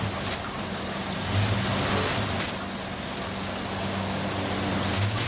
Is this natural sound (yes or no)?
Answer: yes